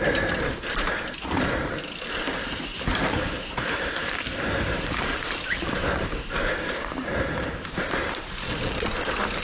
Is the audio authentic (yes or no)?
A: no